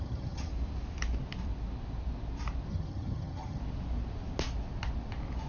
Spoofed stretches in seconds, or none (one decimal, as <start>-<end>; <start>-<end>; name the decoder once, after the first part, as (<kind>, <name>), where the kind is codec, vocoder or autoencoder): 0.0-0.5 (vocoder, HiFi-GAN); 2.7-3.6